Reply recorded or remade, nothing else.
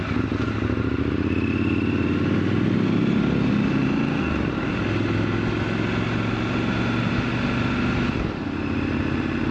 recorded